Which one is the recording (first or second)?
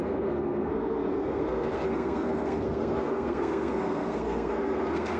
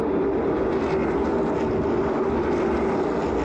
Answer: second